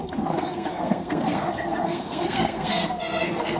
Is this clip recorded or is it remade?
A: remade